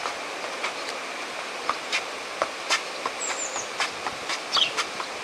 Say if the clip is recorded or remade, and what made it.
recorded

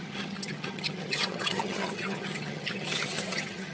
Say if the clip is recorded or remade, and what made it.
remade, vocoder, HiFi-GAN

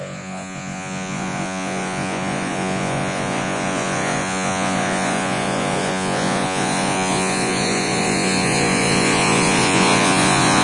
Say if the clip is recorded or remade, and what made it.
remade, vocoder, Vocos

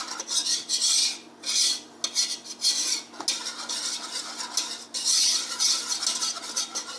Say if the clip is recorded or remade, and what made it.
recorded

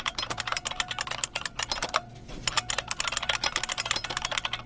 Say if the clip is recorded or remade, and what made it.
recorded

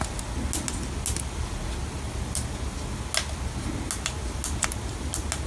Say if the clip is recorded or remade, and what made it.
recorded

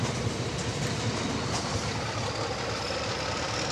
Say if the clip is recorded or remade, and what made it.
recorded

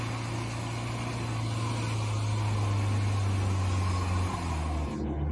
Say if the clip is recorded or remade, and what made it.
recorded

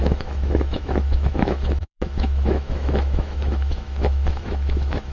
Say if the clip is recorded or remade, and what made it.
remade, autoencoder, DAC-VAE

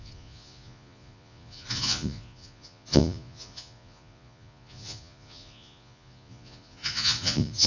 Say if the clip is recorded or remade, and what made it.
remade, vocoder, Vocos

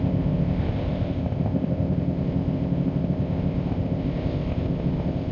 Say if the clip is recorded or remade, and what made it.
remade, codec, ZipCodec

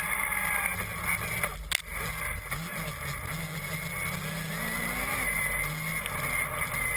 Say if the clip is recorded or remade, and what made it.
recorded